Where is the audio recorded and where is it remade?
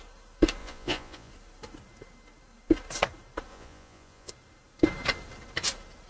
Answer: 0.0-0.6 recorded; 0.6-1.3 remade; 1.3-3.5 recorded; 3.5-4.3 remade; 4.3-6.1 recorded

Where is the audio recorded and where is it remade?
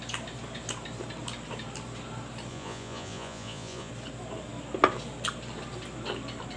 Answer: 0.0-2.5 recorded; 2.5-3.9 remade; 3.9-6.6 recorded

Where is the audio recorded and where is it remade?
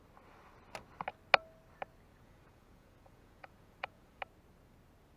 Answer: 0.0-2.1 recorded; 2.1-4.2 remade; 4.2-5.2 recorded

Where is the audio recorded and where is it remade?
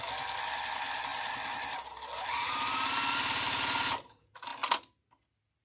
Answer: 0.0-5.6 recorded